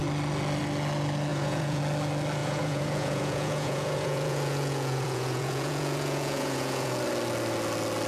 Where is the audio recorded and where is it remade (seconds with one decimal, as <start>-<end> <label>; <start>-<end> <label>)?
0.0-1.3 recorded; 1.3-1.8 remade; 1.8-2.4 recorded; 2.4-7.0 remade; 7.0-8.1 recorded